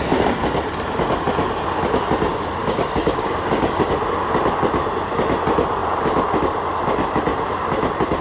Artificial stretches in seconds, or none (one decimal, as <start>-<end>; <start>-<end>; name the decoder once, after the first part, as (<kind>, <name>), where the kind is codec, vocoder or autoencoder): 2.6-3.9 (codec, DAC)